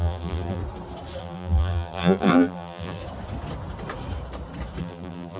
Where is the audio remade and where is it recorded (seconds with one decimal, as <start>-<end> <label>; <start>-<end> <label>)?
0.0-0.6 remade; 0.6-1.2 recorded; 1.2-3.0 remade; 3.0-4.8 recorded; 4.8-5.4 remade